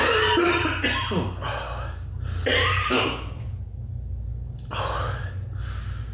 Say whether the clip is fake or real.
real